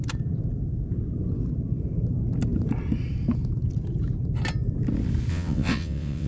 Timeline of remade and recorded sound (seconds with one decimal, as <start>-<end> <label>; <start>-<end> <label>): 0.0-5.3 recorded; 5.3-6.3 remade